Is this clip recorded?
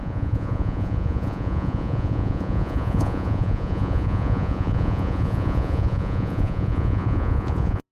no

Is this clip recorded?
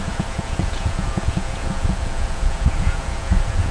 no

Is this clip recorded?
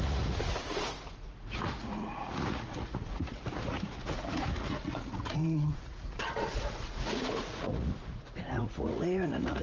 no